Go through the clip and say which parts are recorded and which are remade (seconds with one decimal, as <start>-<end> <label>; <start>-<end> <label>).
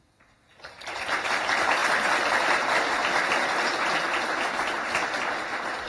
0.0-0.5 recorded; 0.5-1.0 remade; 1.0-1.8 recorded; 1.8-2.5 remade; 2.5-3.0 recorded; 3.0-5.9 remade